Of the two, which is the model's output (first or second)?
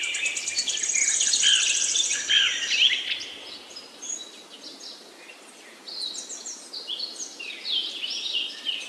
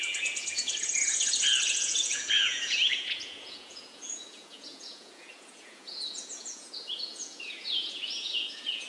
second